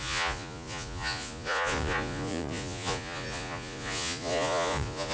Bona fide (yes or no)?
no